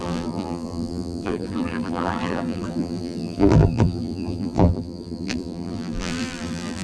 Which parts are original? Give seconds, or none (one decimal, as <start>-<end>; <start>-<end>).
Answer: none